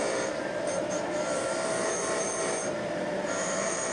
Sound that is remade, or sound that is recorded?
remade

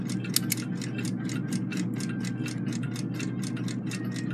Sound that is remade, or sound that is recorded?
recorded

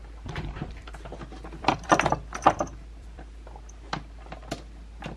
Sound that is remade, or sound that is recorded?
remade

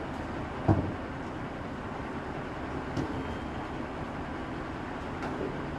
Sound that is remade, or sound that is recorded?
recorded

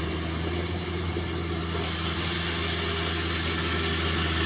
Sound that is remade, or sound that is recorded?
recorded